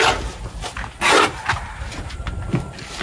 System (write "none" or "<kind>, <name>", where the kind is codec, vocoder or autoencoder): none